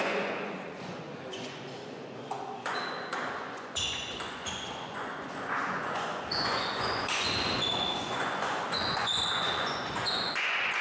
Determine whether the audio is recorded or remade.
remade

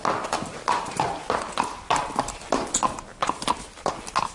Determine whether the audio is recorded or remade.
recorded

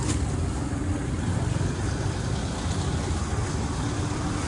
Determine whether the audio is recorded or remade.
recorded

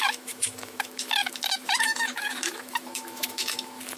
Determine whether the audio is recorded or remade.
remade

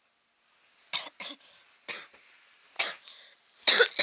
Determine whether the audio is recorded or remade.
recorded